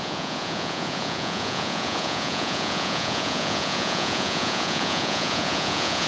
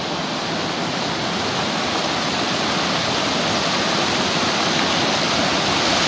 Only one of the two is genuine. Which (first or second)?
second